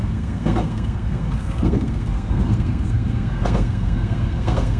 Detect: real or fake fake